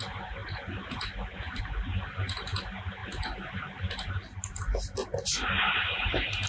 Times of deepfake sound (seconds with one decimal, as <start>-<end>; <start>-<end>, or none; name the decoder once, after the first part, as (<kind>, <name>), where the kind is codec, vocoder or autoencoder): none